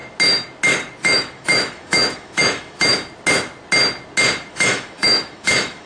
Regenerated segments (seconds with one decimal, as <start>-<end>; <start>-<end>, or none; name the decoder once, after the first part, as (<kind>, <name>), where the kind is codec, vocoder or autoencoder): 1.0-2.9 (autoencoder, DAC-VAE); 4.5-5.9